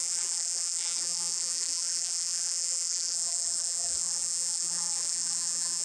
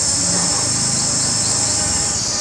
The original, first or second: second